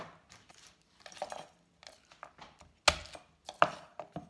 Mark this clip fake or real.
real